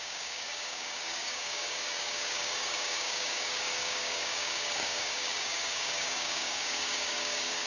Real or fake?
fake